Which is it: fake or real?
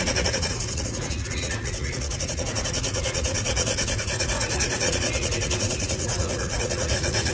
fake